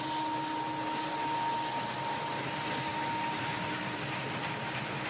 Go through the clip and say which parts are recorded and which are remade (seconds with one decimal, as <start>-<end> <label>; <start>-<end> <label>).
0.0-5.1 recorded